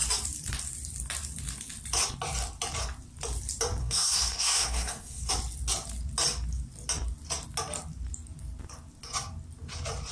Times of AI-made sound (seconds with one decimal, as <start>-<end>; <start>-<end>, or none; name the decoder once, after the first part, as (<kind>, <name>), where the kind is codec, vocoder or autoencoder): 3.8-5.3 (codec, SNAC)